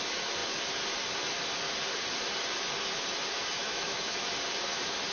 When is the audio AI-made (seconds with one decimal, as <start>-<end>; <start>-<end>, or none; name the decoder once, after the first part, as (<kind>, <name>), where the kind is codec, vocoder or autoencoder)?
3.6-4.3 (autoencoder, DAC-VAE)